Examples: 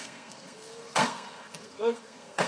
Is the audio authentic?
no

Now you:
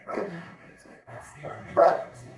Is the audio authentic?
no